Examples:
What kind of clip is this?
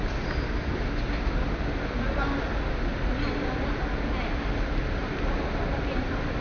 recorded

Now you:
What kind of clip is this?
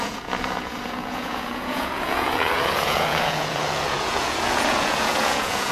remade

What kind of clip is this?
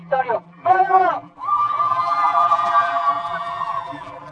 remade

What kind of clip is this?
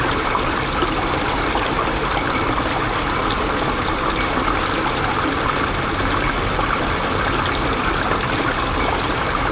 recorded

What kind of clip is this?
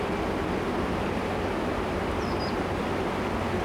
recorded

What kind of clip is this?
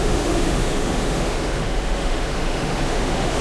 remade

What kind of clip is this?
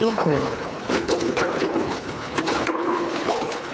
remade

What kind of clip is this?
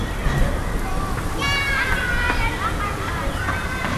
recorded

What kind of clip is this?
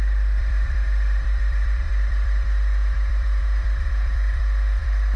remade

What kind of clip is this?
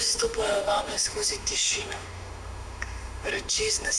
remade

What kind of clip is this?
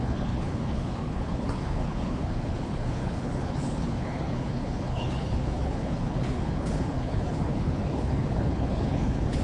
remade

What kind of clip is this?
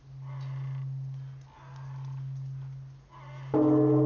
recorded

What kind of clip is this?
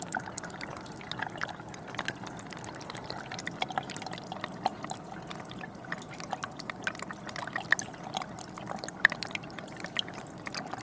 recorded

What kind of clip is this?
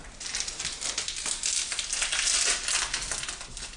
recorded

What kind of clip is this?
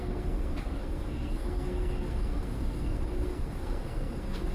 remade